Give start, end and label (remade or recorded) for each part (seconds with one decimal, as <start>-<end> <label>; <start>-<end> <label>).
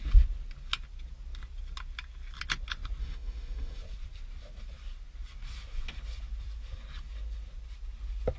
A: 0.0-3.0 recorded; 3.0-3.8 remade; 3.8-8.4 recorded